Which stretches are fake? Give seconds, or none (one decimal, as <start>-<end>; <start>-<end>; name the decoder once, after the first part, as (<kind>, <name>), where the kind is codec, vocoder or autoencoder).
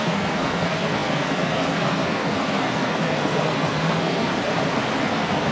0.0-4.3 (codec, SNAC); 5.0-5.5